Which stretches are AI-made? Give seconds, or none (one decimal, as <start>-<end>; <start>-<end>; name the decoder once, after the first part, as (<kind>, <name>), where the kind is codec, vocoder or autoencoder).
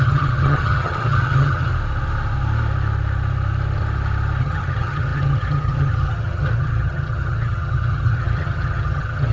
0.0-1.7 (vocoder, HiFi-GAN); 4.4-9.3